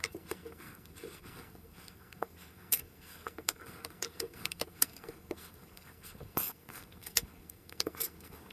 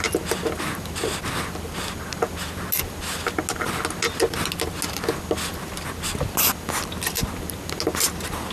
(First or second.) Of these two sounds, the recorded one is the second